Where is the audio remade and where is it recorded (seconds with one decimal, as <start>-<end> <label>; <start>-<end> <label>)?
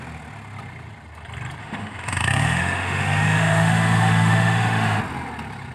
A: 0.0-1.6 recorded; 1.6-5.0 remade; 5.0-5.7 recorded